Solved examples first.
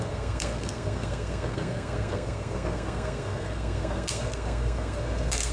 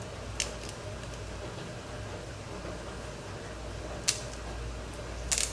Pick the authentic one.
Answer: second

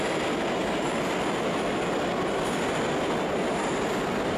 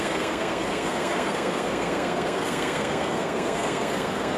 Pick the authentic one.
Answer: first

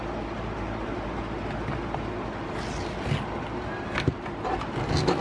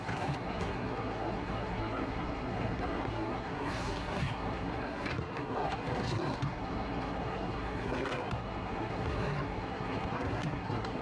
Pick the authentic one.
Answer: first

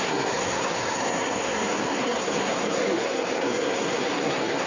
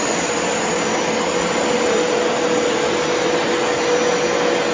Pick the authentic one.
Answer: second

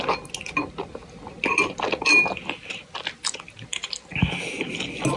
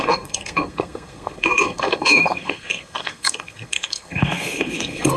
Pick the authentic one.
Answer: first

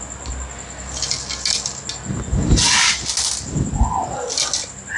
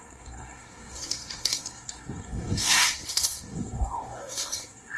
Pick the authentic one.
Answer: first